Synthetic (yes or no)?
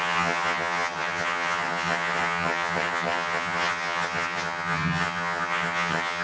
yes